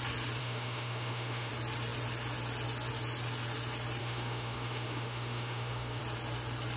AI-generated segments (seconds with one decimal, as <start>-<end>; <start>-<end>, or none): 0.4-1.5; 4.0-6.0